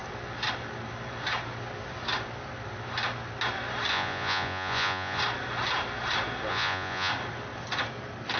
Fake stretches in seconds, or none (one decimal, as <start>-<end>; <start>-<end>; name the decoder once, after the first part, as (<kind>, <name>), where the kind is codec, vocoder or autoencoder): 3.9-5.2 (vocoder, Vocos); 6.5-7.1